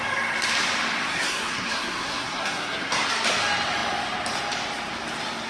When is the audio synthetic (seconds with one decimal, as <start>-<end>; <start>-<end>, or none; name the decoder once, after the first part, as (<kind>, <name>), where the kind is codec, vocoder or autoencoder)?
1.1-3.1 (codec, SNAC)